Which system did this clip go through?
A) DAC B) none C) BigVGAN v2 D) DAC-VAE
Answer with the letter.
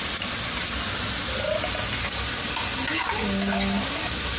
B